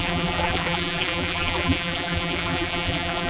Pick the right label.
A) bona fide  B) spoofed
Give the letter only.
B